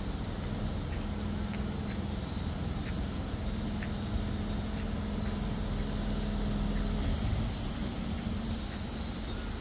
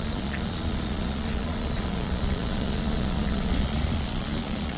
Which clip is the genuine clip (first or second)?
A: first